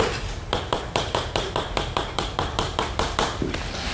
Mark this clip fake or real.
fake